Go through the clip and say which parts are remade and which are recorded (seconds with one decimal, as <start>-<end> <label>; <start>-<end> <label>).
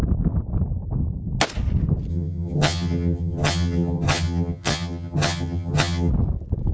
0.0-2.1 recorded; 2.1-6.1 remade; 6.1-6.7 recorded